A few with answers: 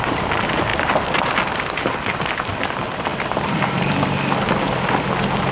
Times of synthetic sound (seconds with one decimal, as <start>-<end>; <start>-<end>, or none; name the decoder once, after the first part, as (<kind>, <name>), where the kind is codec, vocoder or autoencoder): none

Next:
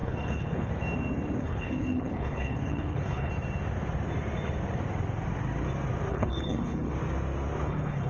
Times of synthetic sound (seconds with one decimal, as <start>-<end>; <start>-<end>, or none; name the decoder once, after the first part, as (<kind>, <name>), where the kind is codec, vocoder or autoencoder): 0.0-0.7 (codec, HILCodec); 1.4-3.3; 6.1-6.9; 7.6-8.1

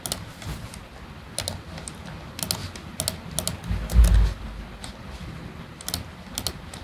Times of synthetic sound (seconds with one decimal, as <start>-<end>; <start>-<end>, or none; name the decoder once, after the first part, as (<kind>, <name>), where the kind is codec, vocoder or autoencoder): none

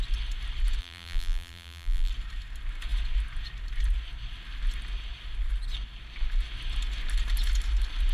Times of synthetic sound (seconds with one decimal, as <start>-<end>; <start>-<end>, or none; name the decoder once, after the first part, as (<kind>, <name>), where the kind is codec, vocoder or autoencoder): 0.8-2.1 (vocoder, BigVGAN v2)

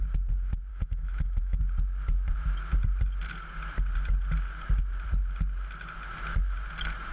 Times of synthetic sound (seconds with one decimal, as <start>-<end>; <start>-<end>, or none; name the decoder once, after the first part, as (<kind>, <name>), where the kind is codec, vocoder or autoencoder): 0.7-1.6 (autoencoder, DAC-VAE)

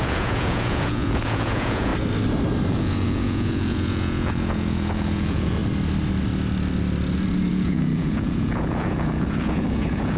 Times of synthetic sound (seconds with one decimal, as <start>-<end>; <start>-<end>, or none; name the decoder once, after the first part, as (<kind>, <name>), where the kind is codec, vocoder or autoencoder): 0.0-1.9 (vocoder, Vocos); 2.7-5.6; 7.5-10.2

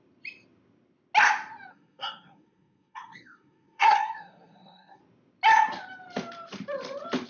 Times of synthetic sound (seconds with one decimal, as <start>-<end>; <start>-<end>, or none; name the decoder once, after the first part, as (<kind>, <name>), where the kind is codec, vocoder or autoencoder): 1.7-5.0 (codec, SNAC)

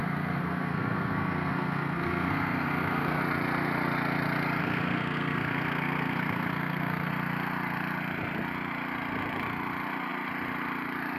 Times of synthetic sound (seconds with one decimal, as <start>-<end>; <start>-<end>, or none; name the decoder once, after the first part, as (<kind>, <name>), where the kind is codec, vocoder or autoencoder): 0.0-3.2 (codec, SNAC); 4.6-7.1